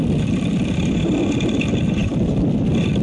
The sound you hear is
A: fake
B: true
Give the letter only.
A